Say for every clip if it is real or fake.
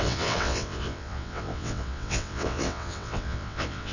fake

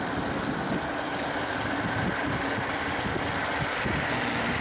real